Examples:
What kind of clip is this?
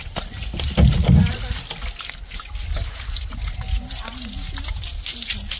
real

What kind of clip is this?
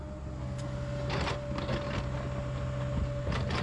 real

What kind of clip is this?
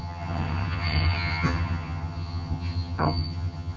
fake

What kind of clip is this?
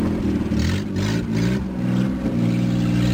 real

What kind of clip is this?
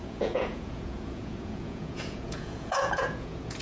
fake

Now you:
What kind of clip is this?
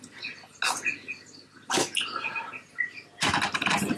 real